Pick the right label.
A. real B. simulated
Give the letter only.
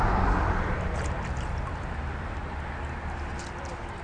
A